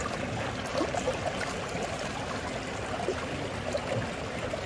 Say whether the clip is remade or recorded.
recorded